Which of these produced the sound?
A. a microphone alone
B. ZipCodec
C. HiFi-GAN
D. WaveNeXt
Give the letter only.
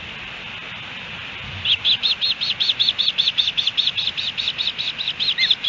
A